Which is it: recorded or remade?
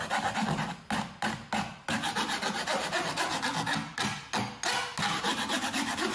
recorded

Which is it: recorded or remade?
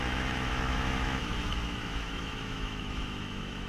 remade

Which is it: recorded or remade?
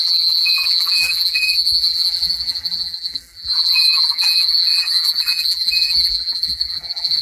remade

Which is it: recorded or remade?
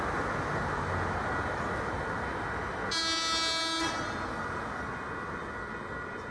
recorded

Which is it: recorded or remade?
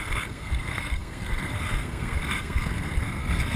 remade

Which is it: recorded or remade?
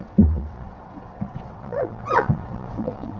remade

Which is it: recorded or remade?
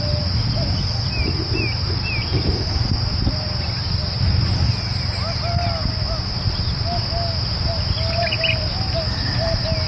recorded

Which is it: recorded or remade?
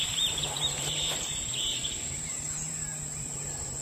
remade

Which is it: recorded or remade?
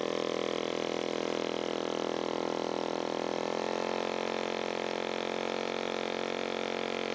remade